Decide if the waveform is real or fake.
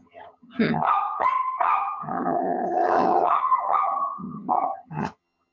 fake